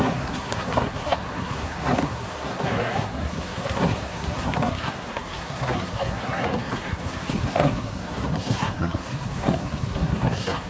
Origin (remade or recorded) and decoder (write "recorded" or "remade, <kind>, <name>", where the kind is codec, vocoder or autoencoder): remade, codec, SNAC